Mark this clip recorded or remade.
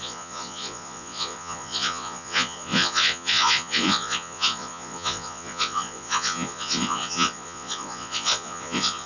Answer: remade